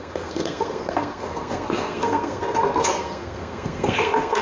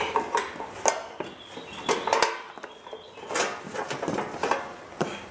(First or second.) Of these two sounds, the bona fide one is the second